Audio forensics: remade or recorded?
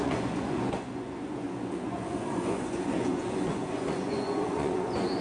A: remade